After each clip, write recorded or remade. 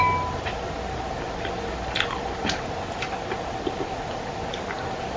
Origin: recorded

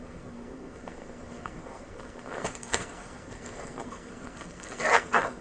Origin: remade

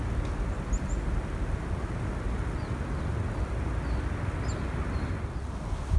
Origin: recorded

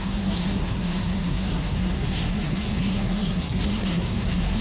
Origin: remade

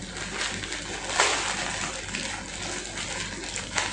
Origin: recorded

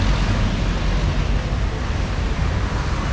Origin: recorded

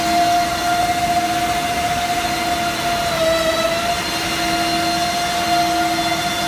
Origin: recorded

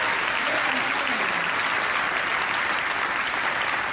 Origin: recorded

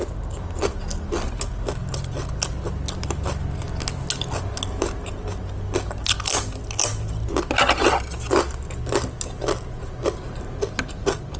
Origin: recorded